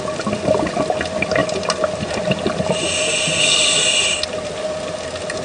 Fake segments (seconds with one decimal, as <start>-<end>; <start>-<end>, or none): none